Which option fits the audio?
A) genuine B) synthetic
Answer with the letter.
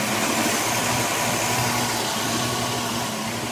A